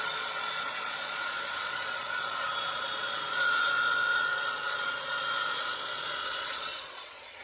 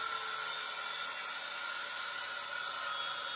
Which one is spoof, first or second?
first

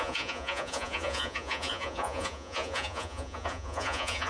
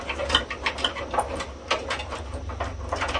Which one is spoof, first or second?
first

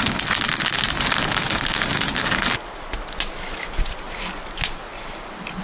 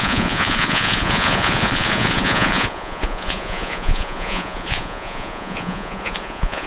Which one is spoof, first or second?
second